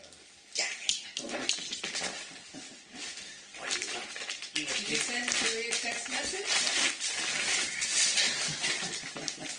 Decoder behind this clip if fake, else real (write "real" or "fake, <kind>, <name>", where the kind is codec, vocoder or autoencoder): real